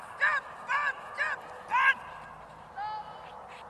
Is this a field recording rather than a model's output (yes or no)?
yes